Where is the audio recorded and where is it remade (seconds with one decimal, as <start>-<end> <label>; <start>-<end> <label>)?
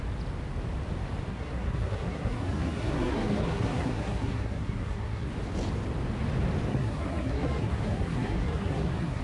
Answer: 0.0-1.3 recorded; 1.3-5.3 remade; 5.3-6.7 recorded; 6.7-9.2 remade